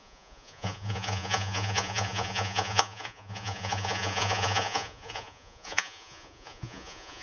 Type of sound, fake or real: fake